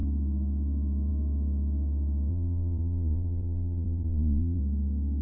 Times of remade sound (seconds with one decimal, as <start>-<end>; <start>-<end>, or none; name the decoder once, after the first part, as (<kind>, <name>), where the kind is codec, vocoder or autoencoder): 2.3-4.6 (vocoder, Vocos)